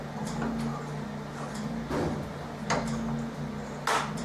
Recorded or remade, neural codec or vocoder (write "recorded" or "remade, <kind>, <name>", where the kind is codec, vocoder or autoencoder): recorded